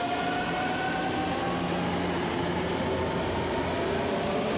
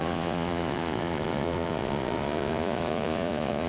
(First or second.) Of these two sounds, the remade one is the second